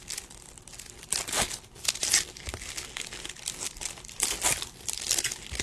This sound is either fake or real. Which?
real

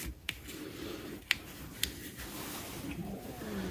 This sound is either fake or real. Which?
real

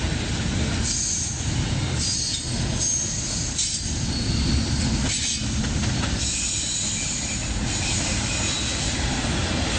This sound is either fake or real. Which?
real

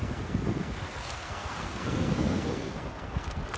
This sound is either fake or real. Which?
fake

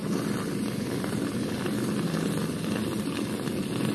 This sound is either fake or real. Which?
real